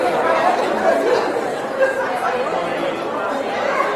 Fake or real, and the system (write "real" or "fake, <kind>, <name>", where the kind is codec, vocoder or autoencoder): real